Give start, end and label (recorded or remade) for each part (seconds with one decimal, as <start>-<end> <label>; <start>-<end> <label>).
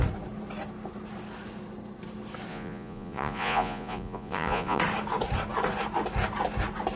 0.0-2.5 recorded; 2.5-4.8 remade; 4.8-7.0 recorded